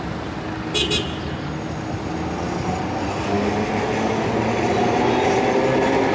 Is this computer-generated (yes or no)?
no